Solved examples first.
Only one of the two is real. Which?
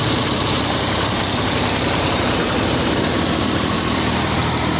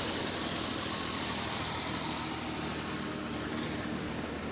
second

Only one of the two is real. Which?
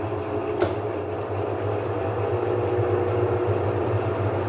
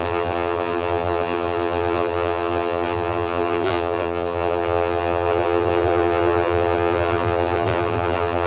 first